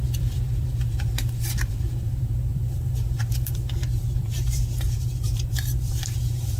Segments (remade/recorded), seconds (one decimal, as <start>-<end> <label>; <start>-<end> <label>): 0.0-6.6 remade

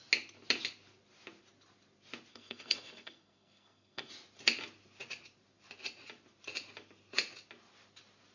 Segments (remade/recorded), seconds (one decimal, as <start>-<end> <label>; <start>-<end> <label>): 0.0-2.3 recorded; 2.3-4.1 remade; 4.1-8.3 recorded

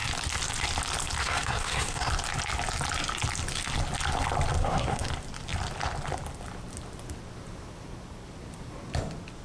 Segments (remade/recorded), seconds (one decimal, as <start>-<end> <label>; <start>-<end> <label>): 0.0-1.2 recorded; 1.2-2.1 remade; 2.1-4.6 recorded; 4.6-5.1 remade; 5.1-9.4 recorded

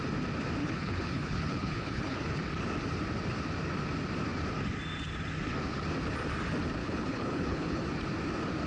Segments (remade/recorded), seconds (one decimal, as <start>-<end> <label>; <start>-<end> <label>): 0.0-0.6 recorded; 0.6-2.4 remade; 2.4-6.8 recorded; 6.8-7.8 remade; 7.8-8.7 recorded

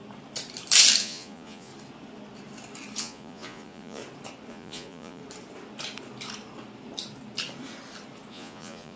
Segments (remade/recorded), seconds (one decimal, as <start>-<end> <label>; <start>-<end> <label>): 0.0-1.0 recorded; 1.0-1.7 remade; 1.7-3.0 recorded; 3.0-4.0 remade; 4.0-4.5 recorded; 4.5-5.2 remade; 5.2-8.3 recorded; 8.3-9.0 remade

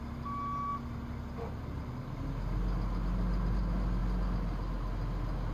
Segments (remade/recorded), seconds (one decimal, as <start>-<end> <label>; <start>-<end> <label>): 0.0-5.5 recorded

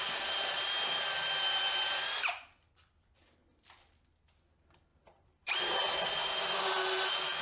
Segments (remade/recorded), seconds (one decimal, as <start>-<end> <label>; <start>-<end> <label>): 0.0-4.9 recorded; 4.9-5.8 remade; 5.8-7.4 recorded

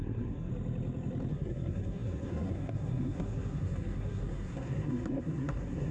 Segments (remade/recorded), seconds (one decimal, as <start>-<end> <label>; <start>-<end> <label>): 0.0-0.5 remade; 0.5-1.3 recorded; 1.3-5.9 remade